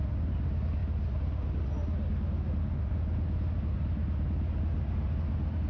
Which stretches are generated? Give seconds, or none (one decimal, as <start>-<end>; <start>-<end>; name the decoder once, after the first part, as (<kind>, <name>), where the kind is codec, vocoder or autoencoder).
none